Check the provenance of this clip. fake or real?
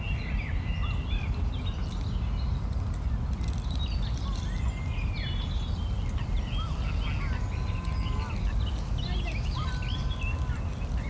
real